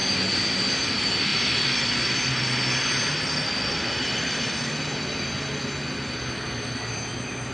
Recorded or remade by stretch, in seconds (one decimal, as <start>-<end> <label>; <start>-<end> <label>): 0.0-7.5 recorded